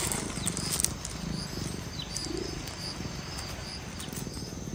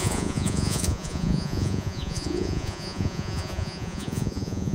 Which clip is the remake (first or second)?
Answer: second